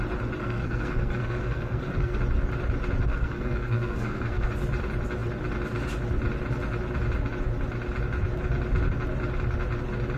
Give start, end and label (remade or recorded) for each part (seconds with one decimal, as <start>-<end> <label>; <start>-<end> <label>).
0.0-0.4 recorded; 0.4-2.2 remade; 2.2-3.1 recorded; 3.1-4.5 remade; 4.5-10.2 recorded